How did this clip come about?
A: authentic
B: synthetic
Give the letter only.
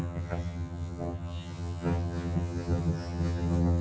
B